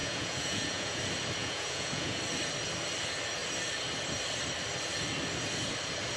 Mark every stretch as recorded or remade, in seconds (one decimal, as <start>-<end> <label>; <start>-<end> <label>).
0.0-1.0 remade; 1.0-1.4 recorded; 1.4-2.2 remade; 2.2-6.2 recorded